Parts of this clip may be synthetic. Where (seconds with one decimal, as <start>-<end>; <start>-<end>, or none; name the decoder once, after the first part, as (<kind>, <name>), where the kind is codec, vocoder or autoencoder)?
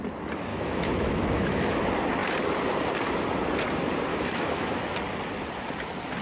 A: 0.5-1.8 (autoencoder, DAC-VAE); 4.1-4.7